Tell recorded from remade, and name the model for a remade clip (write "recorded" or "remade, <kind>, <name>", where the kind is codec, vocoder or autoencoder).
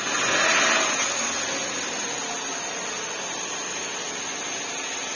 recorded